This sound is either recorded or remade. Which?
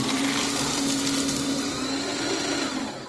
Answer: recorded